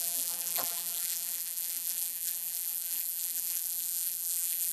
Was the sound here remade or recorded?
remade